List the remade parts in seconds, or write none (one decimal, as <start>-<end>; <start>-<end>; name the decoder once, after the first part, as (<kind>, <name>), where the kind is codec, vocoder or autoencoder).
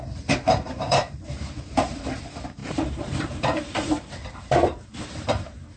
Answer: 0.0-5.8 (vocoder, BigVGAN v2)